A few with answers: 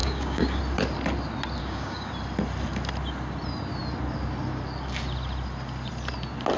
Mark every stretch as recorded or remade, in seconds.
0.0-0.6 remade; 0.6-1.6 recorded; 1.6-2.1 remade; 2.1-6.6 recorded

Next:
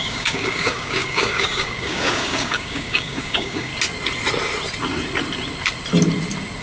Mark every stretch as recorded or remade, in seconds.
0.0-3.7 remade; 3.7-6.6 recorded

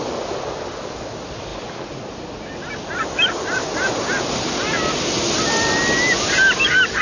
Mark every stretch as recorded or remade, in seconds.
0.0-7.0 recorded

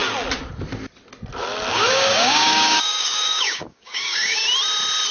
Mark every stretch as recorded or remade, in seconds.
0.0-1.7 recorded; 1.7-4.4 remade; 4.4-5.1 recorded

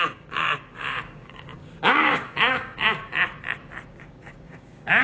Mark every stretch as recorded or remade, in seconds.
0.0-3.1 remade; 3.1-3.9 recorded; 3.9-5.0 remade

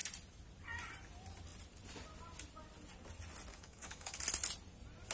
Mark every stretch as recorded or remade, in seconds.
0.0-3.5 recorded; 3.5-4.2 remade; 4.2-5.1 recorded

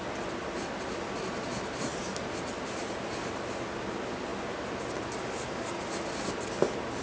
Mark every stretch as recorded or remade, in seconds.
0.0-7.0 recorded

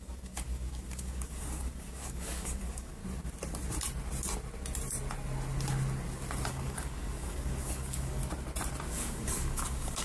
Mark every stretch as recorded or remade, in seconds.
0.0-3.0 remade; 3.0-6.5 recorded; 6.5-8.2 remade; 8.2-8.9 recorded; 8.9-10.0 remade